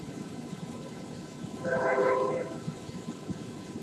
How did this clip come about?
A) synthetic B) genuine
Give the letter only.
A